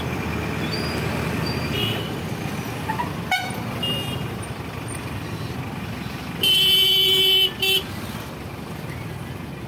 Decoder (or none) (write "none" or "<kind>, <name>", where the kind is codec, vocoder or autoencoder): none